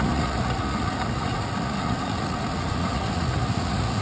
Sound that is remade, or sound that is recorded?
remade